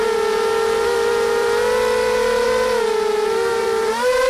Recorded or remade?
remade